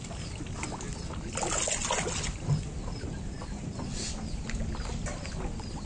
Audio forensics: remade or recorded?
recorded